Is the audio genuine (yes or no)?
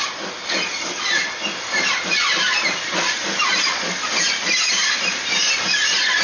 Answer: yes